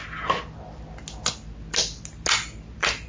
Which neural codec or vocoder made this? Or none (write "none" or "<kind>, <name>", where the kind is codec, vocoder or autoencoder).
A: none